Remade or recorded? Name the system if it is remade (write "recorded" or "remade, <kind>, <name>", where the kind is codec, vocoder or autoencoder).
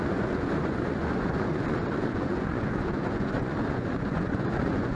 remade, vocoder, Vocos